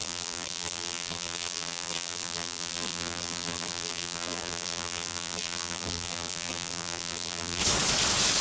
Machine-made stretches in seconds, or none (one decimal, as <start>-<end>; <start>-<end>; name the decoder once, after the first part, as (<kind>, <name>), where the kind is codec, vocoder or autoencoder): 0.0-7.6 (vocoder, BigVGAN v2)